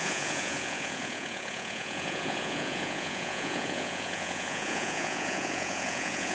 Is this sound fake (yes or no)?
yes